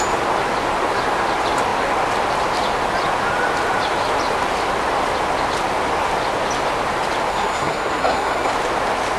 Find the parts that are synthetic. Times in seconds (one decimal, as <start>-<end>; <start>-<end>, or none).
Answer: 7.3-8.5